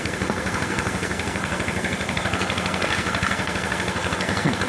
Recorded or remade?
remade